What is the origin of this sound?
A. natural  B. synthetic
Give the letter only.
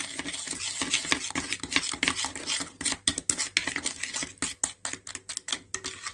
A